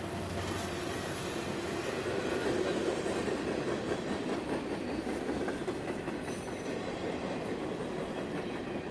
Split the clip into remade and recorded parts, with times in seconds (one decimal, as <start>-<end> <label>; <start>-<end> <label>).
0.0-8.9 recorded